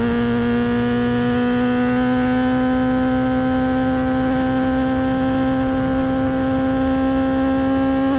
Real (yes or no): yes